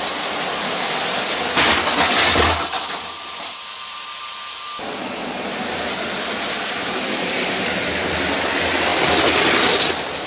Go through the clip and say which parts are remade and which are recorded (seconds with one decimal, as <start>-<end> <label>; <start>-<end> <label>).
0.0-10.3 recorded